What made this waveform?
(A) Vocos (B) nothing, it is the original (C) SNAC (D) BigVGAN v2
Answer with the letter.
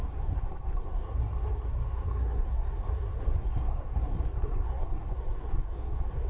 C